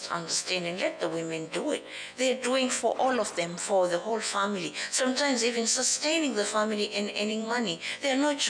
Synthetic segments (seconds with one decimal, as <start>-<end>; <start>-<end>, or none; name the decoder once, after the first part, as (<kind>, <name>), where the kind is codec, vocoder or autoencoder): 0.0-2.8 (vocoder, Vocos); 3.6-8.5

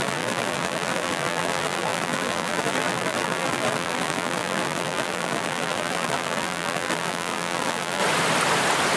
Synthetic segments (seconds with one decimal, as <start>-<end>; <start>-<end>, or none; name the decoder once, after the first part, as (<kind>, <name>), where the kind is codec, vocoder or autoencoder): 0.0-8.0 (vocoder, BigVGAN v2)

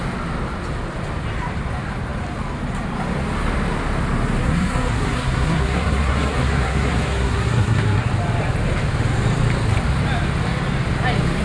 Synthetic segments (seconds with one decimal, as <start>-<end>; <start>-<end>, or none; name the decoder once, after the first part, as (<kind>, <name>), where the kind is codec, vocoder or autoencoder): 4.4-8.1 (codec, SNAC)

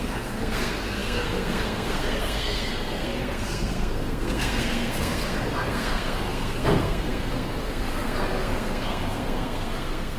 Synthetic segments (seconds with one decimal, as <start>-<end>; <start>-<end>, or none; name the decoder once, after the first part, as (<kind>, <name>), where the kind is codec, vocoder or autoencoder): 0.0-10.2 (codec, SNAC)

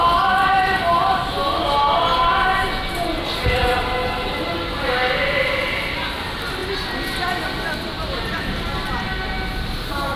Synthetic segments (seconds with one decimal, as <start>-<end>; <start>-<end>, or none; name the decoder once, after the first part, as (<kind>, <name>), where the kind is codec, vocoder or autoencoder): none

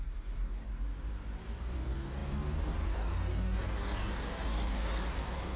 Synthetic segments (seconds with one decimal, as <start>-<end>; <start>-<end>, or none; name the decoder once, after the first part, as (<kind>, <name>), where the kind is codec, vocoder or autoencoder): 0.0-0.7 (codec, DAC); 1.5-5.6

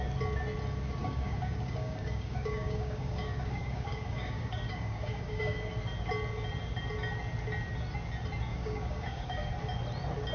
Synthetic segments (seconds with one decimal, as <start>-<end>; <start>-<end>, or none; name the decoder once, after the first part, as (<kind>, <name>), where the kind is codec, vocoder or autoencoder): 1.0-5.7 (codec, DAC); 8.5-9.5